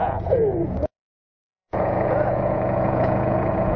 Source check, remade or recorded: remade